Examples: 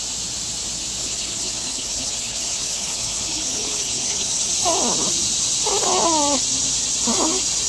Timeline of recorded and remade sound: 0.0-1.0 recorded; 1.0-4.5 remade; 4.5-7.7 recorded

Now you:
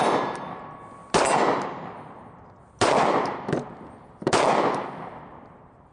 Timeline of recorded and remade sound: 0.0-5.9 recorded

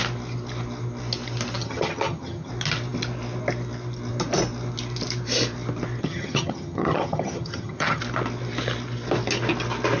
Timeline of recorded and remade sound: 0.0-1.6 recorded; 1.6-2.5 remade; 2.5-6.0 recorded; 6.0-8.0 remade; 8.0-10.0 recorded

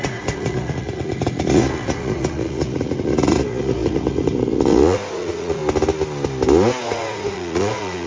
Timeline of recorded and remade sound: 0.0-5.6 remade; 5.6-6.8 recorded; 6.8-8.1 remade